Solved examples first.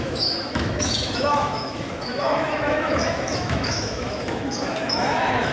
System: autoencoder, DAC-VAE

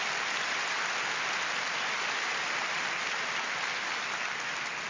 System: none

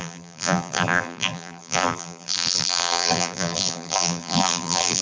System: vocoder, BigVGAN v2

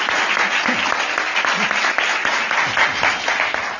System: none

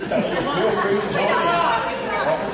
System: none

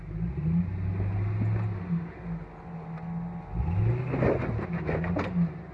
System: none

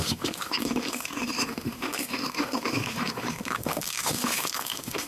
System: autoencoder, DAC-VAE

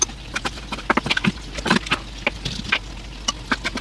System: none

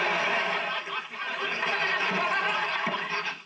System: none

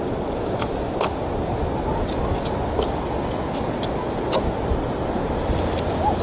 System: none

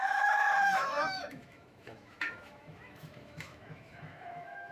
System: autoencoder, DAC-VAE